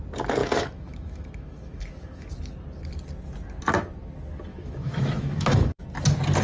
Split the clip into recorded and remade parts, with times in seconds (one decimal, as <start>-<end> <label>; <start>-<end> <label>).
0.0-0.4 recorded; 0.4-2.3 remade; 2.3-4.5 recorded; 4.5-5.8 remade; 5.8-6.4 recorded